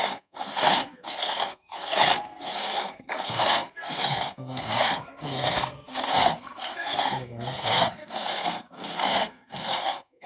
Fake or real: fake